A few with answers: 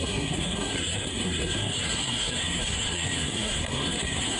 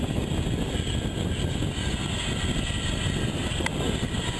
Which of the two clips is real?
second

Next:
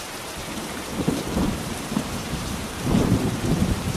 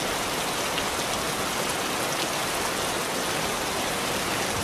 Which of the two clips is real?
second